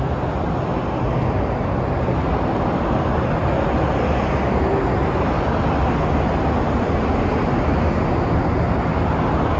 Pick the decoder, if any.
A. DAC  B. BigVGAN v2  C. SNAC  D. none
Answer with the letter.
D